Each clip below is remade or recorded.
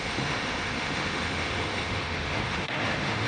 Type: remade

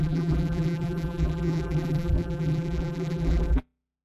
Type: remade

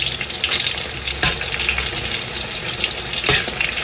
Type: recorded